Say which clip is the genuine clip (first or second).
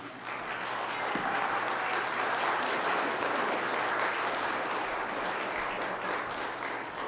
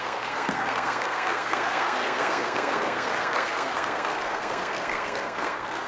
first